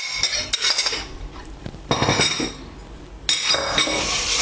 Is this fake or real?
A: real